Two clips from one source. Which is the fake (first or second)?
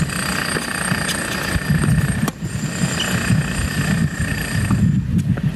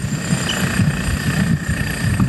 second